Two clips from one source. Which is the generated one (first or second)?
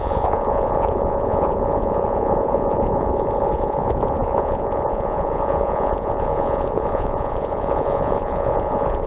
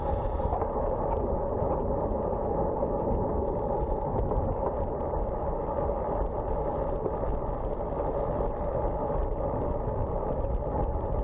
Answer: first